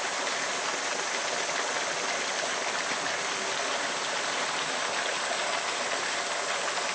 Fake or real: real